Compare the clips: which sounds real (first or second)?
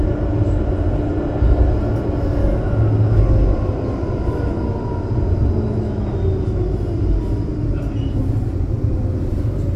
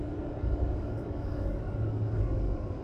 first